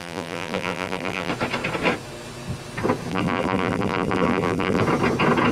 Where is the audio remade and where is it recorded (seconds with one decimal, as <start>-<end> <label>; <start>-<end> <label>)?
0.0-1.3 remade; 1.3-3.1 recorded; 3.1-4.8 remade; 4.8-5.5 recorded

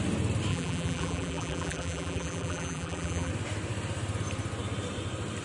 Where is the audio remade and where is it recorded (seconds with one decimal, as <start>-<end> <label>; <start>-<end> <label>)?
0.0-0.5 recorded; 0.5-3.3 remade; 3.3-5.4 recorded